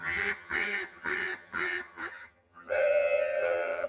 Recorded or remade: remade